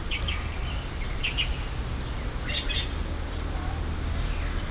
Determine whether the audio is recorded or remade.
recorded